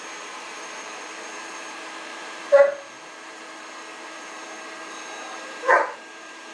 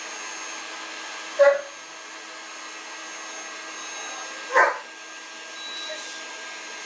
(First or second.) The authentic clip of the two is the second